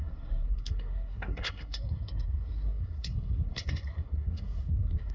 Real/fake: fake